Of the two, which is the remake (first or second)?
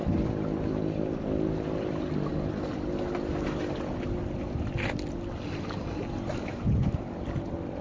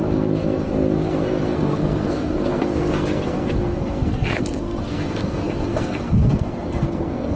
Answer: second